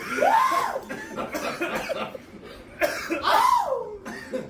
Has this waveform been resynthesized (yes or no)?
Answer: no